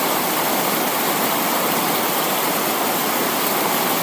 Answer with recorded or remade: recorded